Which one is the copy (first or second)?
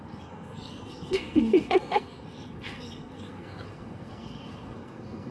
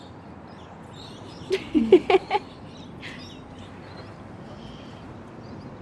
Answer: first